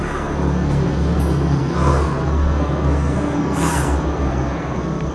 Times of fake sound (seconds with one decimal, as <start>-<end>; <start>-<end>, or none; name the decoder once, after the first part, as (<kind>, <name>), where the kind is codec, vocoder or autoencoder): 0.0-5.1 (codec, SNAC)